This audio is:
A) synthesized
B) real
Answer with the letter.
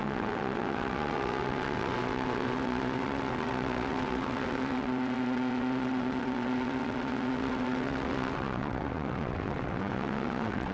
A